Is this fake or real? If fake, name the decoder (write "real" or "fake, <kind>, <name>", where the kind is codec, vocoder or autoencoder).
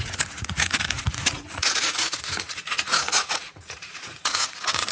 fake, vocoder, Vocos